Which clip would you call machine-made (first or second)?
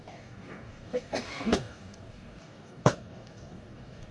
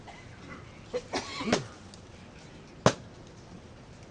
first